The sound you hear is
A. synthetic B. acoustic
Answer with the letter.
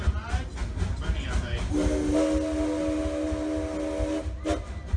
B